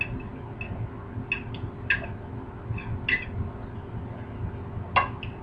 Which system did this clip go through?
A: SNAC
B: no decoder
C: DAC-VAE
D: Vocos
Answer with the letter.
B